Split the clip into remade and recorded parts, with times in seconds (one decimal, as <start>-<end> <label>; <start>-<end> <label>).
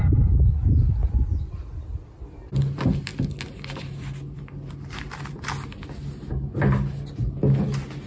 0.0-8.1 recorded